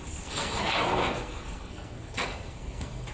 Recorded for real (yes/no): no